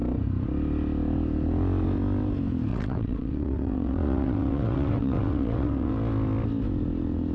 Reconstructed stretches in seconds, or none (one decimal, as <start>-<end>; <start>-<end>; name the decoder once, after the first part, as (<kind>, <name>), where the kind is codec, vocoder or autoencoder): 2.7-5.9 (vocoder, WaveNeXt)